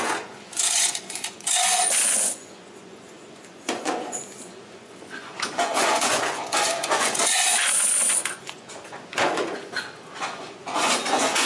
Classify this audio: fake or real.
fake